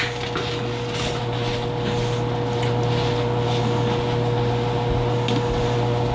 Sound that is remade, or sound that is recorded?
recorded